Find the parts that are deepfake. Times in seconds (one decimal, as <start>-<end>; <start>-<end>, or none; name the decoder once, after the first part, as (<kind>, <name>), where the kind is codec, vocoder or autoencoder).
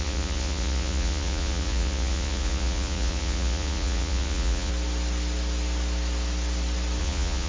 0.0-4.7 (vocoder, Vocos); 7.0-7.5